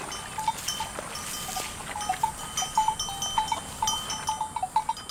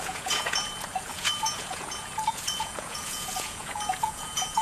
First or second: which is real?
first